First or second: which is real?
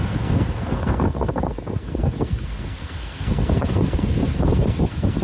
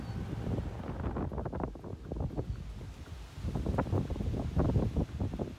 second